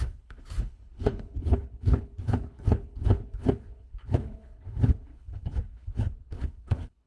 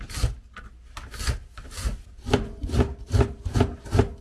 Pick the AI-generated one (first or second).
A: first